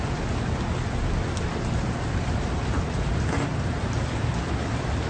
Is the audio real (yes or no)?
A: yes